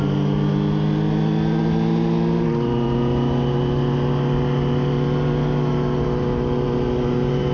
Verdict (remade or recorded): recorded